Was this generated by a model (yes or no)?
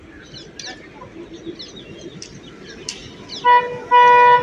no